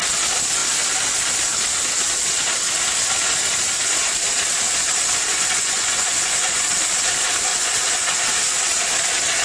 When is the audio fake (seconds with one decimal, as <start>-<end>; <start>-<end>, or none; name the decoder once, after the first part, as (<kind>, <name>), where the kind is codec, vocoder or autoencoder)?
5.3-6.6 (vocoder, Vocos); 7.5-8.1